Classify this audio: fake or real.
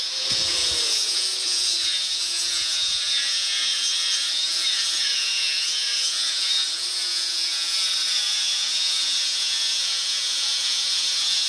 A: fake